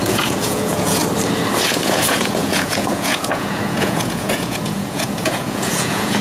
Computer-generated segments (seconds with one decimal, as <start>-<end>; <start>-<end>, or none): 0.0-1.0; 1.7-6.2